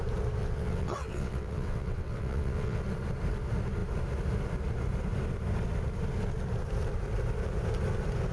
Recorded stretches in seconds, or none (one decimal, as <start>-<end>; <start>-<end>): 0.0-0.4; 2.8-8.3